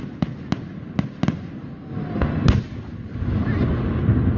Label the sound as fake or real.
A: real